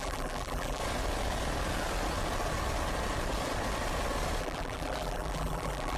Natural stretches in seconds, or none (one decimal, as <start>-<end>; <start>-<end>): 0.8-4.4